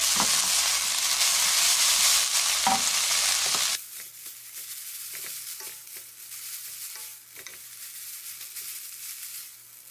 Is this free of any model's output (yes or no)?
yes